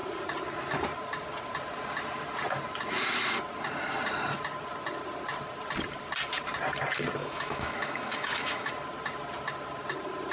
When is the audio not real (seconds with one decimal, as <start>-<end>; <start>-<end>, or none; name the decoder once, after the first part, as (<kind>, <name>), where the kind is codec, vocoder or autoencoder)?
7.2-8.7 (autoencoder, DAC-VAE)